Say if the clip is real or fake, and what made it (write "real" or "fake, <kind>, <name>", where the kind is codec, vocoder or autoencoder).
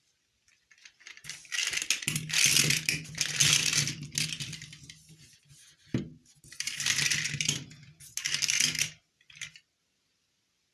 real